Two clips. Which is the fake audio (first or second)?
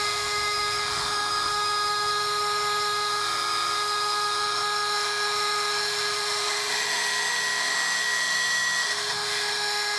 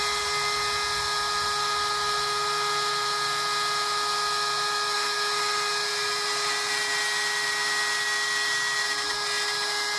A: first